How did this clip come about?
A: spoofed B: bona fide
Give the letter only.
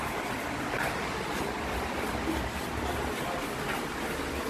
B